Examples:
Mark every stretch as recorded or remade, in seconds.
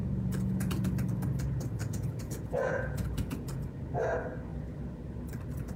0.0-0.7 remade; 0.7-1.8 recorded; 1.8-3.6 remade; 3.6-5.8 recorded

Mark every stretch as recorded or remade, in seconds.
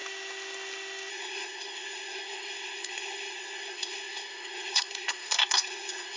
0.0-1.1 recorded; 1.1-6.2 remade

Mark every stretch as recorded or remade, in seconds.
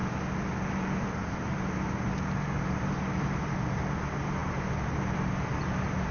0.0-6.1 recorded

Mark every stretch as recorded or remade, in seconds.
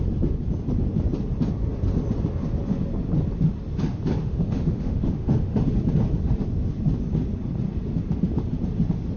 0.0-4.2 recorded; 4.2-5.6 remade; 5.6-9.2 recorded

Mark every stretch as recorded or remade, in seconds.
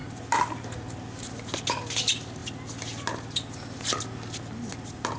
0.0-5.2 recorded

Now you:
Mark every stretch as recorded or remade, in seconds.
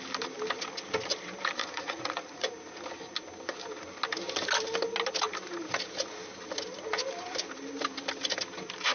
0.0-1.6 recorded; 1.6-2.5 remade; 2.5-8.9 recorded